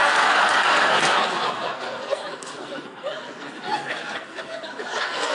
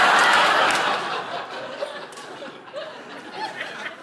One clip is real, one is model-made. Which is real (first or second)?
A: second